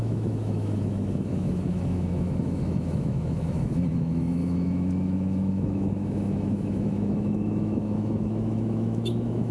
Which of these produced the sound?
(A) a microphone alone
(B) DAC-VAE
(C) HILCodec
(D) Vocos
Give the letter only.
B